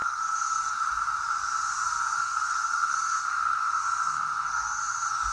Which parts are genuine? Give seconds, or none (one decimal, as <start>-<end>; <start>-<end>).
0.7-2.2; 4.8-5.3